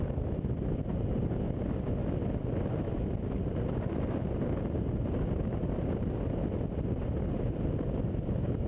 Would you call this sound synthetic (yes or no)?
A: no